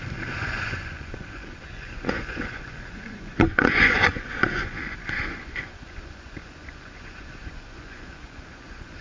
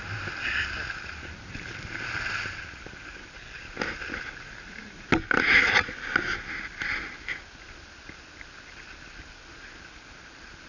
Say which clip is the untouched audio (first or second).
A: second